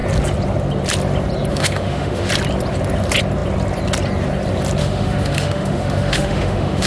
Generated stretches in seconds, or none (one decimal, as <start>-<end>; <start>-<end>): 1.5-2.3; 4.8-6.9